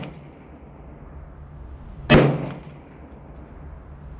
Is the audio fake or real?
real